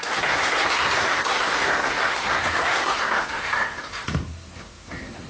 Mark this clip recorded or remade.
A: remade